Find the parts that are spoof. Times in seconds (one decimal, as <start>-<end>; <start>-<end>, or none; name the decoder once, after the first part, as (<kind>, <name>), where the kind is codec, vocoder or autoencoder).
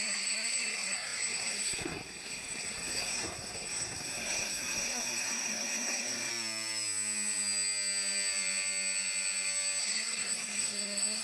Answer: 0.0-6.3 (codec, SNAC); 9.8-11.2